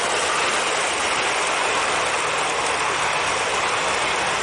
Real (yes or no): yes